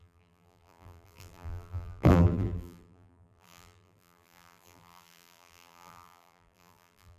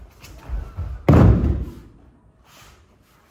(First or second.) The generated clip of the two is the first